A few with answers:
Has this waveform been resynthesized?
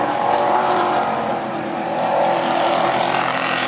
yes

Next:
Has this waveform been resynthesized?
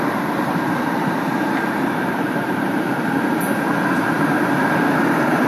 yes